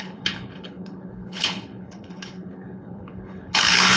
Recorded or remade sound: remade